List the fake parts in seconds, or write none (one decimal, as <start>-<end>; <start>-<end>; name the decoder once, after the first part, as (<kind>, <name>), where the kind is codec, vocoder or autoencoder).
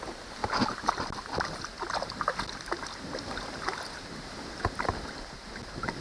none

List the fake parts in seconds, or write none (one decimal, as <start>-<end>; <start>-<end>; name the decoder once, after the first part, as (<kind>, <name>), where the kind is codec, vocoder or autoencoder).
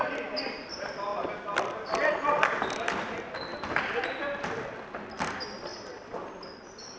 none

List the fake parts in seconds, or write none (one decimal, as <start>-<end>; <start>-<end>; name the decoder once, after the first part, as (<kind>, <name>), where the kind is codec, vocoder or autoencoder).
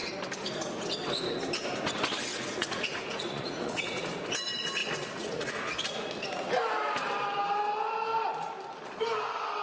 2.3-4.0 (vocoder, Vocos); 4.8-5.5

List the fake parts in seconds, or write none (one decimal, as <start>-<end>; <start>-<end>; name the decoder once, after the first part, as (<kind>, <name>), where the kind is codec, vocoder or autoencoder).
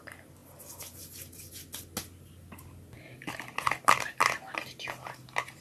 none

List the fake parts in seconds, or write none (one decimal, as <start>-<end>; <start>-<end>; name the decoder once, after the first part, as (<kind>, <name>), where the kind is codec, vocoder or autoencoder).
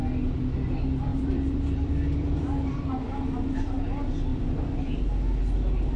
1.1-2.9 (vocoder, BigVGAN v2); 4.3-4.8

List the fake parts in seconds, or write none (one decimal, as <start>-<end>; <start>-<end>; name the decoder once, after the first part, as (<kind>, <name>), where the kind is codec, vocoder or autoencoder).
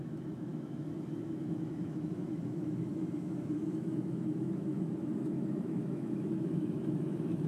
0.0-7.5 (autoencoder, DAC-VAE)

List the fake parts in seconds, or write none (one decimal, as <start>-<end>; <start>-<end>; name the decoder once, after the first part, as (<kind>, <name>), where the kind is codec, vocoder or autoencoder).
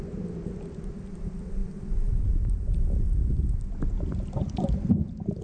none